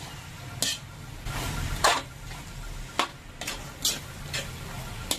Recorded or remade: recorded